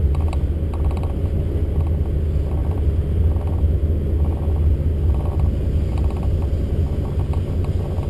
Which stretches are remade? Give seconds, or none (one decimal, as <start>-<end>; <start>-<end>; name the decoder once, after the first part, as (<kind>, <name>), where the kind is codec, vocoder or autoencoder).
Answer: 2.6-3.2 (vocoder, BigVGAN v2)